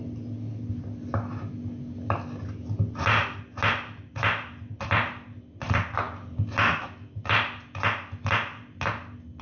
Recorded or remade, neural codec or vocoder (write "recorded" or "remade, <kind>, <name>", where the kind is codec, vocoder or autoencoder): recorded